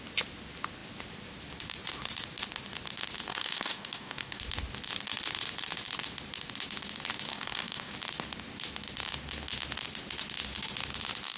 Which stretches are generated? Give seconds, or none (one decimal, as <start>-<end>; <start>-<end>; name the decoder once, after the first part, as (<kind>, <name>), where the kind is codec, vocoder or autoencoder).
3.3-4.4 (codec, DAC); 7.3-7.9